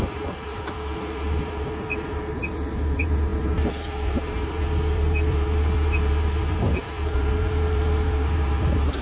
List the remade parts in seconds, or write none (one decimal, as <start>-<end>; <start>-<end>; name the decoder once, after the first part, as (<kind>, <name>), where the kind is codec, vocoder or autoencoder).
0.0-9.0 (vocoder, BigVGAN v2)